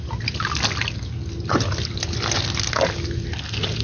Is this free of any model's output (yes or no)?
yes